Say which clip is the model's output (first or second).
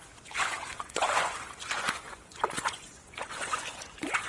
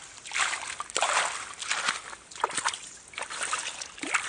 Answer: first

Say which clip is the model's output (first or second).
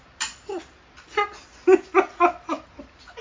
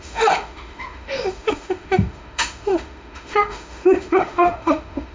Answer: second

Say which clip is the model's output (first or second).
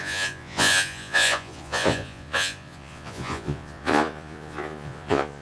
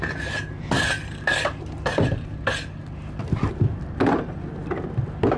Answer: first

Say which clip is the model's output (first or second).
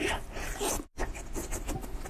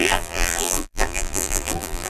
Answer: second